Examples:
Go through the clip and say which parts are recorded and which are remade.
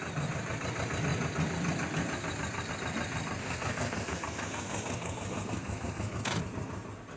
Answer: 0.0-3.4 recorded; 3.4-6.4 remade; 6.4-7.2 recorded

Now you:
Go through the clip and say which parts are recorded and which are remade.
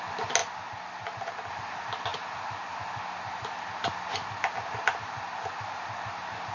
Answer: 0.0-6.5 recorded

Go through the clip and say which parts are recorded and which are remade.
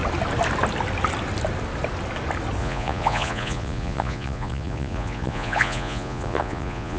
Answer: 0.0-2.6 recorded; 2.6-7.0 remade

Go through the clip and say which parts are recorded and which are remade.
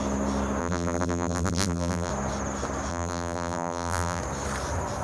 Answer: 0.0-0.6 recorded; 0.6-2.1 remade; 2.1-2.9 recorded; 2.9-4.2 remade; 4.2-5.0 recorded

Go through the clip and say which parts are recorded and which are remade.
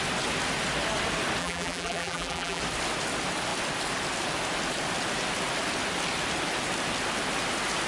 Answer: 0.0-1.4 recorded; 1.4-2.6 remade; 2.6-7.9 recorded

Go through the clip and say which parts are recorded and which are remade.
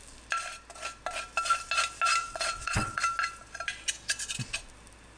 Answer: 0.0-2.2 recorded; 2.2-3.0 remade; 3.0-5.2 recorded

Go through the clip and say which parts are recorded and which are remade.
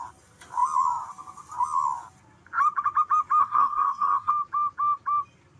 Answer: 0.0-3.4 recorded; 3.4-4.3 remade; 4.3-5.6 recorded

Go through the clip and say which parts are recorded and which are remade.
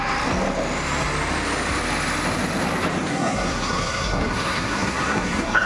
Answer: 0.0-3.1 recorded; 3.1-5.7 remade